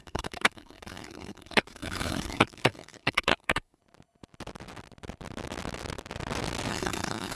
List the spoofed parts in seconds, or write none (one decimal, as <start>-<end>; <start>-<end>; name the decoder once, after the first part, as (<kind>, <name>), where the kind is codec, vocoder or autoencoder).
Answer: 0.0-3.8 (codec, SNAC); 6.7-7.4